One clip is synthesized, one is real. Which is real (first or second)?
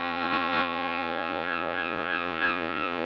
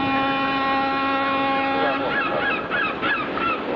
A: second